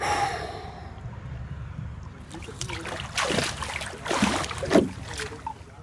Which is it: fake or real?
real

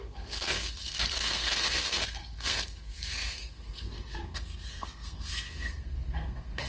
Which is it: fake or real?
fake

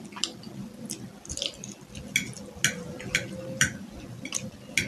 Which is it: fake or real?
real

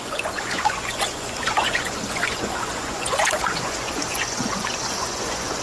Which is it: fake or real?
fake